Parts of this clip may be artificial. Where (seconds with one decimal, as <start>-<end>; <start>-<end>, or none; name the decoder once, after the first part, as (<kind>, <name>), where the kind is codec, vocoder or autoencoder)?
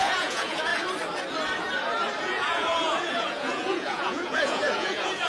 0.0-0.7 (vocoder, Vocos); 2.2-5.3